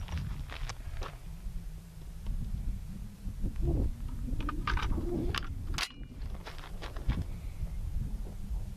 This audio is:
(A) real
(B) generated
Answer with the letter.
A